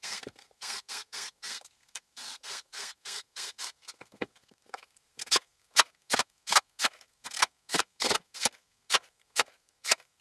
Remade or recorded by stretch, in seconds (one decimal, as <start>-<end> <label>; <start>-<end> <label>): 0.0-10.2 remade